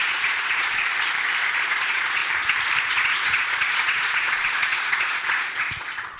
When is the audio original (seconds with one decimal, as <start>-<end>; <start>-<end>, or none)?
0.9-1.7; 2.2-2.8